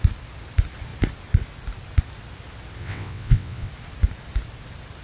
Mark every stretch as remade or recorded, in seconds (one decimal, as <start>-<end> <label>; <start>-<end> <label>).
0.0-2.8 recorded; 2.8-3.7 remade; 3.7-5.0 recorded